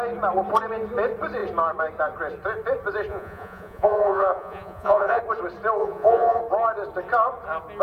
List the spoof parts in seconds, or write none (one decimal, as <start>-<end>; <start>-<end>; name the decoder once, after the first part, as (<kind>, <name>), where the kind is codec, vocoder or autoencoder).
3.1-5.2 (vocoder, Vocos); 5.8-6.4

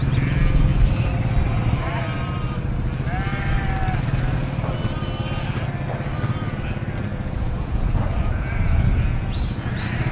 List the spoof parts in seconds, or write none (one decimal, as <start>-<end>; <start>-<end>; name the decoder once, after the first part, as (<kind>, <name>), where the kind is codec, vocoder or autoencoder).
7.1-9.7 (vocoder, Vocos)

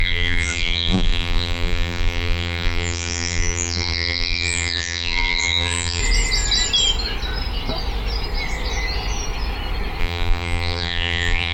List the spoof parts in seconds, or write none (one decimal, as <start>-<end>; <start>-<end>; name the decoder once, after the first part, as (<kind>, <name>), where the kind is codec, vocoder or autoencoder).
0.0-6.0 (vocoder, BigVGAN v2); 10.0-11.5